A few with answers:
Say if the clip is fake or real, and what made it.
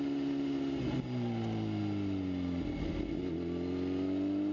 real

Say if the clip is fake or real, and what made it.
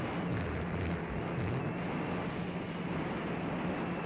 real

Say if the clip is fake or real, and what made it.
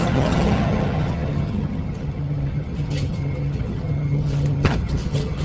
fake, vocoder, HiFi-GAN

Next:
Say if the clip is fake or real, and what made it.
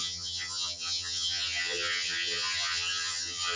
fake, vocoder, HiFi-GAN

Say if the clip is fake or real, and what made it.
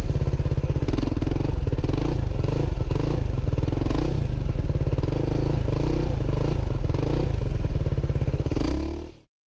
real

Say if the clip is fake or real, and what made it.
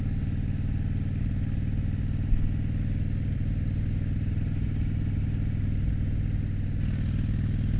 real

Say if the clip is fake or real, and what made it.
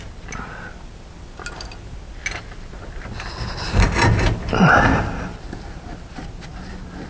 real